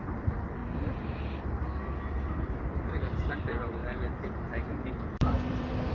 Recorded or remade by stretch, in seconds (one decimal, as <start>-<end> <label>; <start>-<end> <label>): 0.0-0.6 remade; 0.6-2.9 recorded; 2.9-5.9 remade